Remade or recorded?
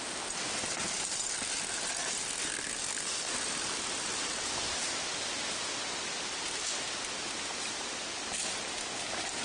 recorded